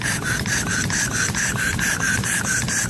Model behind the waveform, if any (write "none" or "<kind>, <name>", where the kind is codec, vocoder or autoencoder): vocoder, BigVGAN v2